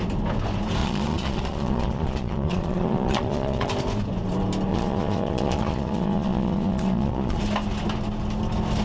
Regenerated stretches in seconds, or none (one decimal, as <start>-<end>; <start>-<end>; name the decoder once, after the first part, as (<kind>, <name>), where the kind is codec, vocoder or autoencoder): 0.8-3.7 (vocoder, Vocos); 4.7-7.4